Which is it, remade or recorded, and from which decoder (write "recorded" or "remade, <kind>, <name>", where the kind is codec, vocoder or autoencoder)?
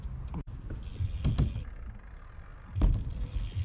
recorded